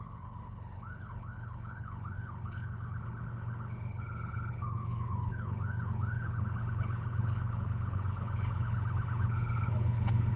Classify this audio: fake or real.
fake